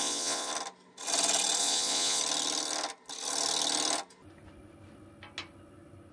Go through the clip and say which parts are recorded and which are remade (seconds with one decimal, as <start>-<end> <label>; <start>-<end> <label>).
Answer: 0.0-0.5 remade; 0.5-1.6 recorded; 1.6-2.2 remade; 2.2-6.1 recorded